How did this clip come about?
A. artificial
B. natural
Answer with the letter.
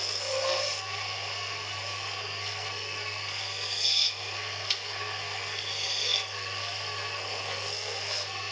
A